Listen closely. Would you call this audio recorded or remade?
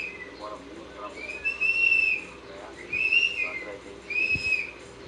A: recorded